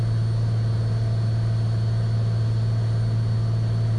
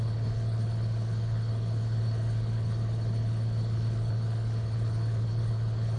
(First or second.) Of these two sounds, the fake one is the second